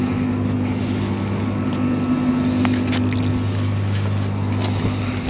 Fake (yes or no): no